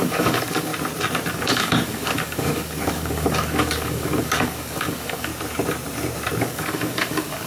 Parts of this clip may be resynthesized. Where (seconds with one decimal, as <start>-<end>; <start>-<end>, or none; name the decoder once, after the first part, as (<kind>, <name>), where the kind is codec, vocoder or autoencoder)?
0.0-0.7 (codec, DAC); 1.3-5.3; 6.4-7.5